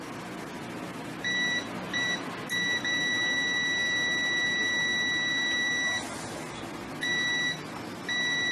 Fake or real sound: real